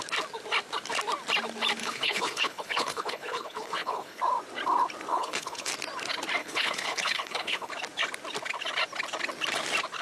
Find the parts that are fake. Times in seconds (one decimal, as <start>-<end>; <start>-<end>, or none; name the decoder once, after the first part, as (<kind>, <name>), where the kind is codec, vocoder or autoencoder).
1.8-4.2 (codec, HILCodec); 5.1-5.7; 6.4-7.7